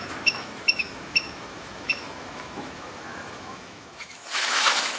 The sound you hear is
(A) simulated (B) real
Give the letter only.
A